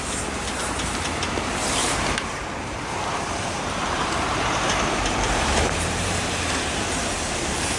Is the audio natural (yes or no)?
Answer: no